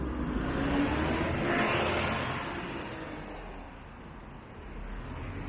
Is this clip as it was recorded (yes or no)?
yes